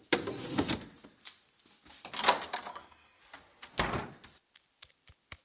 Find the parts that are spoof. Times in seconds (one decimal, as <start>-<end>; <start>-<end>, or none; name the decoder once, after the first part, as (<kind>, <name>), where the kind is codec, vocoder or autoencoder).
2.7-3.2 (codec, SNAC)